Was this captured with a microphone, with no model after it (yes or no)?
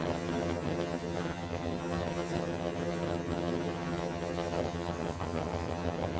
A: no